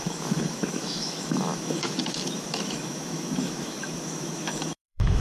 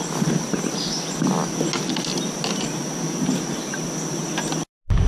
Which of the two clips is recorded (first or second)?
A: second